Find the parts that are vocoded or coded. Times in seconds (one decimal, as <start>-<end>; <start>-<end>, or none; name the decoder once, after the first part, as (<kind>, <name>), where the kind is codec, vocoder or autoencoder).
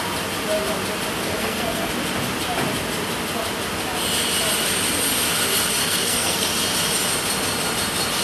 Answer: 1.2-1.9 (codec, SNAC); 5.8-6.5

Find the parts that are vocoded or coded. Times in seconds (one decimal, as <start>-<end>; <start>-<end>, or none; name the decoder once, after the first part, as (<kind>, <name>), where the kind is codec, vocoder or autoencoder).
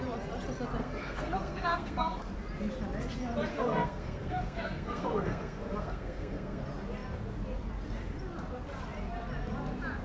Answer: 0.8-2.3 (codec, SNAC); 3.5-6.6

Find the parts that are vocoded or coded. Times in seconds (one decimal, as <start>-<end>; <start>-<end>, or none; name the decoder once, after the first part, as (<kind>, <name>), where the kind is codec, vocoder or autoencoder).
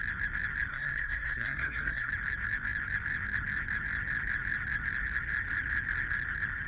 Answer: 0.7-2.1 (codec, SNAC)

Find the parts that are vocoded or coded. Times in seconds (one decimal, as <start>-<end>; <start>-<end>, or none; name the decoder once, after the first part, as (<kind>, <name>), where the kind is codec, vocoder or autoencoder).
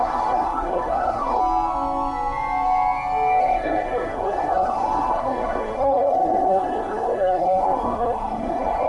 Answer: 0.0-1.4 (codec, SNAC); 3.4-8.9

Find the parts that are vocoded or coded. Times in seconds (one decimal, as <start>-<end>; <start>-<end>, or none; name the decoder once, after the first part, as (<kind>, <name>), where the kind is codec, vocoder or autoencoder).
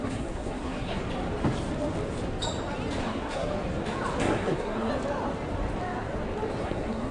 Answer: 0.0-1.0 (codec, SNAC); 3.0-3.5; 4.2-4.9; 6.6-7.1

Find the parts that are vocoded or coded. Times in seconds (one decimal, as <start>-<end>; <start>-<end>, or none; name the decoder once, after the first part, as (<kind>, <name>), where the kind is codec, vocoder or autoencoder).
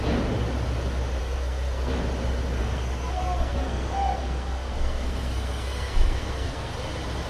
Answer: 1.2-1.9 (codec, SNAC); 2.6-6.7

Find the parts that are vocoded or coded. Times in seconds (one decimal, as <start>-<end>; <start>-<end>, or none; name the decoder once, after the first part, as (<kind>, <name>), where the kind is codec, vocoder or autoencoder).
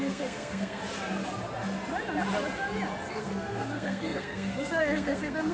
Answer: 0.0-0.8 (codec, SNAC); 3.1-5.5